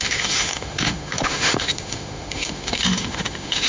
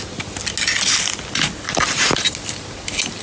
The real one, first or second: second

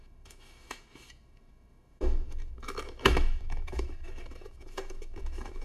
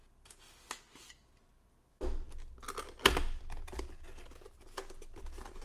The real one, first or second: second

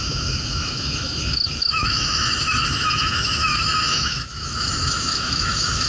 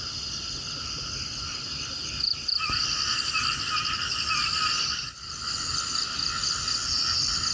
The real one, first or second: second